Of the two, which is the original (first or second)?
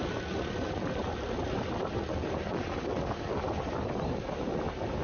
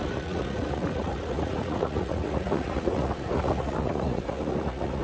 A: first